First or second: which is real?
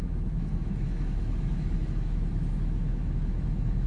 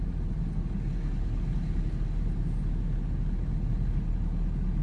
second